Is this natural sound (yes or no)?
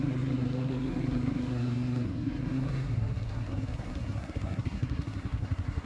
no